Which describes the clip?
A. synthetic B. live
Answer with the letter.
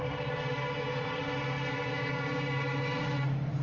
B